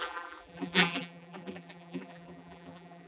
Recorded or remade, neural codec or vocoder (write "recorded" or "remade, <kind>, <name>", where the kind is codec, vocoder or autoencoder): remade, vocoder, BigVGAN v2